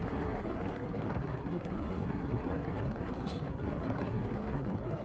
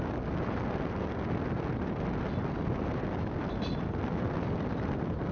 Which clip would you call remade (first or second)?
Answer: first